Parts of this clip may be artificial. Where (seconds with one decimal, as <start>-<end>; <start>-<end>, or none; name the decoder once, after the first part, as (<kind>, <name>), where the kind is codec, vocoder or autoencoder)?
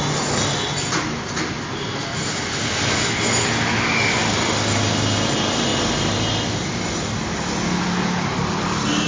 none